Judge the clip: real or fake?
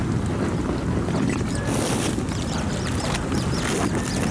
real